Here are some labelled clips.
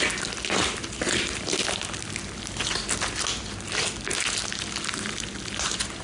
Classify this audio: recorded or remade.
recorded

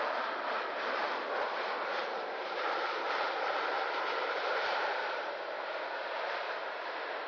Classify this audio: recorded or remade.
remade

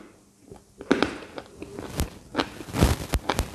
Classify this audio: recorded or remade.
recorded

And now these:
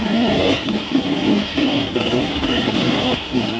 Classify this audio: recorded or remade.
remade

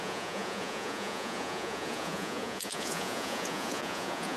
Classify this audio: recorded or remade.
remade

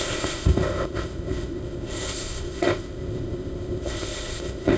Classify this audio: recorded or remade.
remade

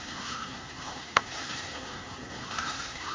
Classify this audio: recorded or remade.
remade